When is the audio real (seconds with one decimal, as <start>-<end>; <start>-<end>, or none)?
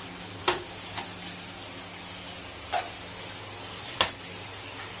0.0-5.0